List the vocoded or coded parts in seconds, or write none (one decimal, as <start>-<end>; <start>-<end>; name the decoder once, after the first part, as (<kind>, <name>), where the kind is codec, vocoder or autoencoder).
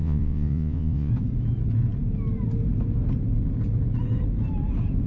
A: 0.0-1.1 (vocoder, Vocos)